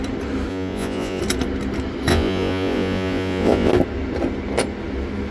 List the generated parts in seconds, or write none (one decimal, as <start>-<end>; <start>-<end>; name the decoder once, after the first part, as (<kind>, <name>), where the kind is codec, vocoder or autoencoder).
0.5-1.2 (vocoder, Vocos); 2.1-3.7